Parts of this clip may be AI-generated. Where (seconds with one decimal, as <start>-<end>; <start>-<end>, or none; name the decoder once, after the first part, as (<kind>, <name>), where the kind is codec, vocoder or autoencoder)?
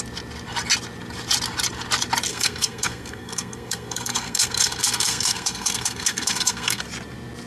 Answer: 2.3-6.8 (codec, SNAC)